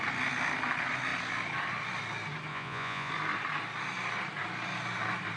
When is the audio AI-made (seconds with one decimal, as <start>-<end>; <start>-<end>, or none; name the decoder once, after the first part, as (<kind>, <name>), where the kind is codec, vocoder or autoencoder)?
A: 2.5-3.1 (vocoder, Vocos)